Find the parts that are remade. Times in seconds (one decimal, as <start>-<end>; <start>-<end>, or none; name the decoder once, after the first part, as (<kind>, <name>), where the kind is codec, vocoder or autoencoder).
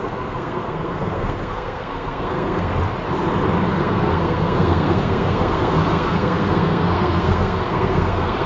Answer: 0.0-2.7 (codec, SNAC); 3.7-8.5